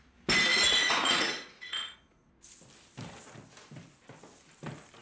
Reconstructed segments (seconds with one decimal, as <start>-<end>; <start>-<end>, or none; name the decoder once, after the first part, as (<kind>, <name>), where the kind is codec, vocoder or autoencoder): 0.5-2.3 (vocoder, Vocos)